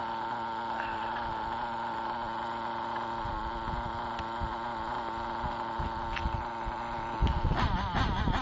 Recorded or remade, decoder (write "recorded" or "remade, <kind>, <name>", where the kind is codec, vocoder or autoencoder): recorded